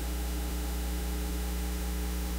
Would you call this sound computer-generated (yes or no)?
yes